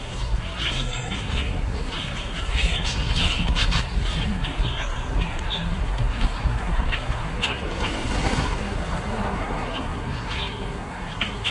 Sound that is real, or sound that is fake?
fake